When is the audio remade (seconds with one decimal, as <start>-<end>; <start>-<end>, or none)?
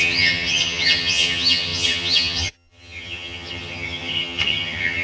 0.0-5.0